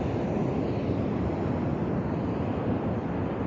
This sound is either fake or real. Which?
real